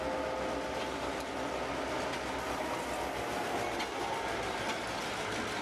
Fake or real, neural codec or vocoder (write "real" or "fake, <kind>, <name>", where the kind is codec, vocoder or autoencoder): real